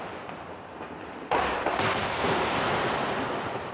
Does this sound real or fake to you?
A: fake